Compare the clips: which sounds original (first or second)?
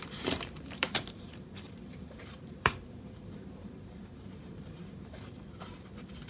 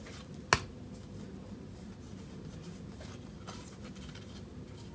second